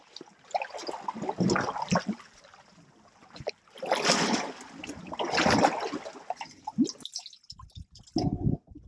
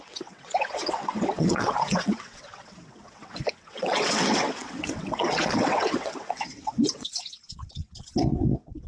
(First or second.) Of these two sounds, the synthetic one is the second